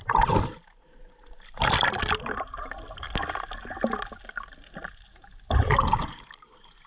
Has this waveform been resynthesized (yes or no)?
no